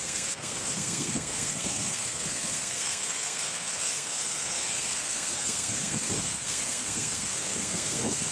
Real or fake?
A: fake